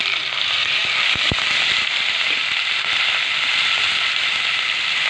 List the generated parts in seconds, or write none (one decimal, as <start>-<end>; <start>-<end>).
0.0-5.1